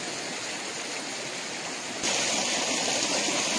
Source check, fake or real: real